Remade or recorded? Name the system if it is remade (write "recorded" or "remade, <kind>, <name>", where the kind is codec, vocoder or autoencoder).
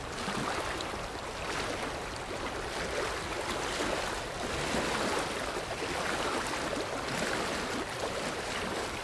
recorded